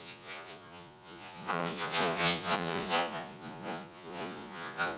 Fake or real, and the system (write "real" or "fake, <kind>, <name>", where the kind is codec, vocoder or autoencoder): fake, vocoder, Vocos